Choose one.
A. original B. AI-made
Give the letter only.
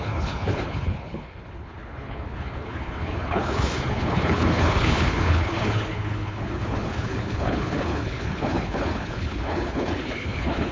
B